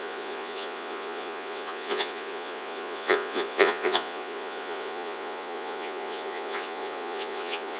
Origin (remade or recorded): remade